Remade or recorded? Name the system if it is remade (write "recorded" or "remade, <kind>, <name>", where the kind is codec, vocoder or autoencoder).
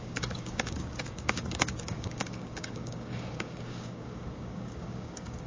remade, codec, DAC